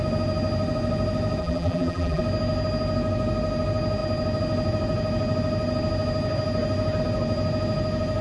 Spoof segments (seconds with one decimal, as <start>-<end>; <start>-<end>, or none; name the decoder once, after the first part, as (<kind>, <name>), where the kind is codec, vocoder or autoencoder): 1.4-2.2 (vocoder, BigVGAN v2)